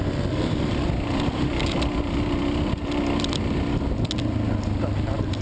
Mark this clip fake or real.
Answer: real